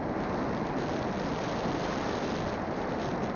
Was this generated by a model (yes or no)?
no